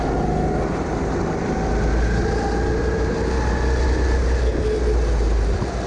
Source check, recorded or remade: recorded